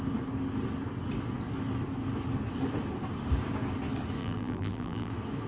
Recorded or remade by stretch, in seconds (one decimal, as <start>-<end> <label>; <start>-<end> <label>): 0.0-4.2 recorded; 4.2-5.1 remade; 5.1-5.5 recorded

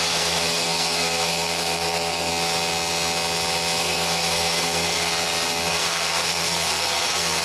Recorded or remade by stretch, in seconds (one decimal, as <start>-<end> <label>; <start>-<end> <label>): 0.0-2.3 remade; 2.3-3.8 recorded; 3.8-5.1 remade; 5.1-5.7 recorded; 5.7-7.4 remade

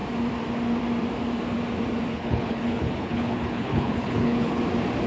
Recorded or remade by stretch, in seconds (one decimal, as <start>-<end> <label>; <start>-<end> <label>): 0.0-2.1 recorded; 2.1-4.6 remade; 4.6-5.1 recorded

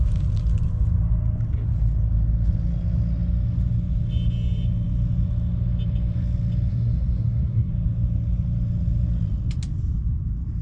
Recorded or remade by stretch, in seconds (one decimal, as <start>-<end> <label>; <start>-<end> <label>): 0.0-6.7 recorded; 6.7-7.7 remade; 7.7-10.6 recorded

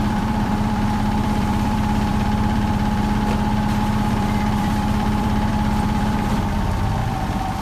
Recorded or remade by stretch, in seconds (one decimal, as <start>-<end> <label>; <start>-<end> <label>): 0.0-7.6 remade